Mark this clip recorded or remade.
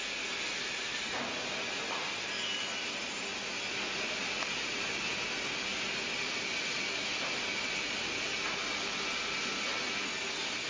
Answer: recorded